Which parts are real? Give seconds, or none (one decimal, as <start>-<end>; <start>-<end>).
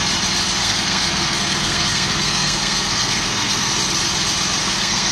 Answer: 0.0-0.6; 3.7-4.6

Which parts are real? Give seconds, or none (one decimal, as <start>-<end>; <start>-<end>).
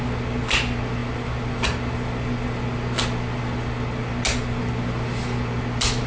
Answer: 0.0-6.1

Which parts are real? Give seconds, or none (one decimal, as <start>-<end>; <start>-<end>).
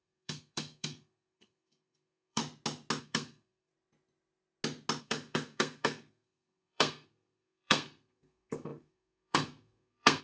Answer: 2.4-3.0; 3.7-5.0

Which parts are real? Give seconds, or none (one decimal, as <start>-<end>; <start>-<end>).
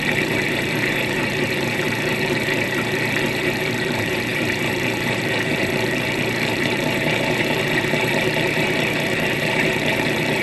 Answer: none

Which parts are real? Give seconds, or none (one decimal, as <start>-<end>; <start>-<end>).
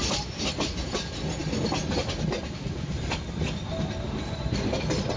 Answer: 0.0-5.2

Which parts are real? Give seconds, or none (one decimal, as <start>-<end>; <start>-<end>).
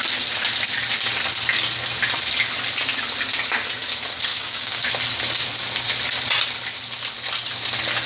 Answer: 0.0-4.3; 4.9-8.1